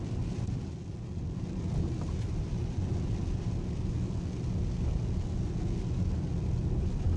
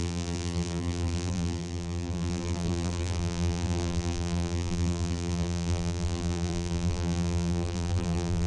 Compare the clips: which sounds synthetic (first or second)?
second